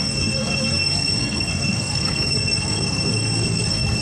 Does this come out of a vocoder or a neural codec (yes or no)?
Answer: yes